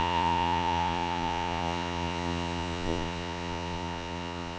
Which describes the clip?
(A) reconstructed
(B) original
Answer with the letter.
A